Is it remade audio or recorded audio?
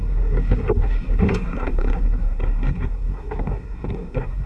remade